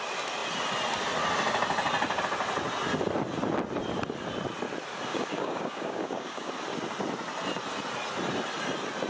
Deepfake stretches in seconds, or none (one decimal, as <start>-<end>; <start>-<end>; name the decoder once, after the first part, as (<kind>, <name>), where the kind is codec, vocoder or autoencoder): 5.1-6.5 (codec, DAC)

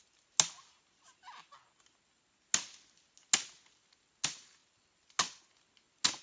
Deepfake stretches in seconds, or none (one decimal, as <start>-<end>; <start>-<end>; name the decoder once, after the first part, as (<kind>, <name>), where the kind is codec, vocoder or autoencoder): none

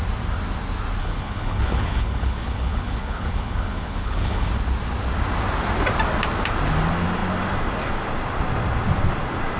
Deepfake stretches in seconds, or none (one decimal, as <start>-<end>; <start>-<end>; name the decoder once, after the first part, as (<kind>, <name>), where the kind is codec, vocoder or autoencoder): 1.0-4.5 (codec, HILCodec)

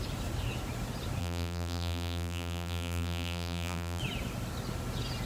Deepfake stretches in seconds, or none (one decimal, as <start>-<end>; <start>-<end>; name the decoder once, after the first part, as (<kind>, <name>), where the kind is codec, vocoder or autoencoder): 1.2-4.0 (vocoder, BigVGAN v2)